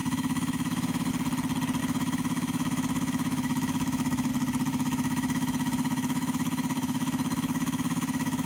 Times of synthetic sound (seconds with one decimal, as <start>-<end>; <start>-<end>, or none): 0.0-1.1; 1.8-4.3; 4.7-8.5